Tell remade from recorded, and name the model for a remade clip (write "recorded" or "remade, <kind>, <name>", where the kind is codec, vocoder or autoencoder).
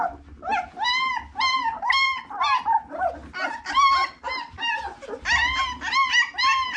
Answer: recorded